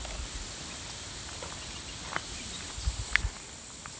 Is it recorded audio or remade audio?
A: recorded